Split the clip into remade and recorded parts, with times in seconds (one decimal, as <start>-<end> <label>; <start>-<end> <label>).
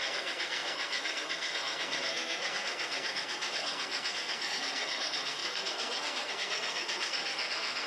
0.0-7.9 remade